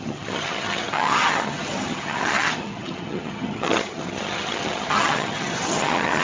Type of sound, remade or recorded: remade